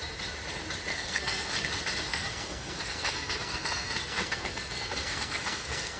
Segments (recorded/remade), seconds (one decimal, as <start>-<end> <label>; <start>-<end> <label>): 0.0-0.9 recorded; 0.9-1.7 remade; 1.7-2.1 recorded; 2.1-6.0 remade